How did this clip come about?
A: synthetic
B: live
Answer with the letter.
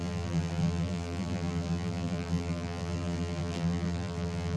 A